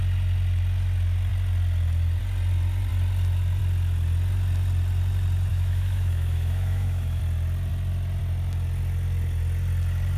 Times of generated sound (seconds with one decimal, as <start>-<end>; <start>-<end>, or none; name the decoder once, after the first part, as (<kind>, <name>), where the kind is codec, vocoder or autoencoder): 5.5-7.2 (autoencoder, DAC-VAE)